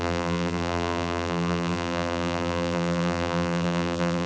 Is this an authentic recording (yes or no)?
no